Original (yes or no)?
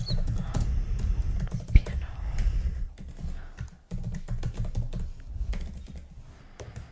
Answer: yes